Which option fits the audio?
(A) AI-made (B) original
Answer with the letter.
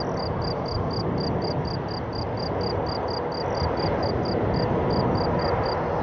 B